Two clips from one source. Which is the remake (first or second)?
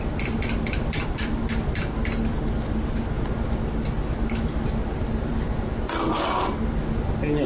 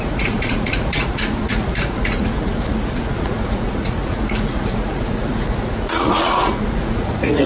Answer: second